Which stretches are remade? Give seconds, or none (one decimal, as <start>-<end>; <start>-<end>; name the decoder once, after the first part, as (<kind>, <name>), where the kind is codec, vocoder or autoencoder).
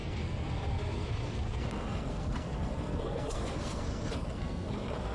0.0-5.1 (codec, SNAC)